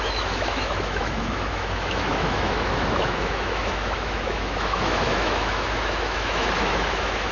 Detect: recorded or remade remade